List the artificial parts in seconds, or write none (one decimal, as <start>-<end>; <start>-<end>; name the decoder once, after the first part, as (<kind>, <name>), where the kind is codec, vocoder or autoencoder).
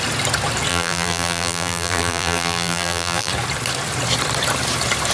0.7-3.3 (vocoder, BigVGAN v2)